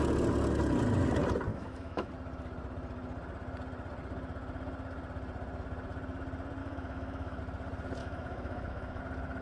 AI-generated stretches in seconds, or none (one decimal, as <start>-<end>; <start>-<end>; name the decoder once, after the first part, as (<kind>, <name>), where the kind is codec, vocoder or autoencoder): 1.5-2.1 (autoencoder, DAC-VAE); 6.6-7.4; 8.0-9.0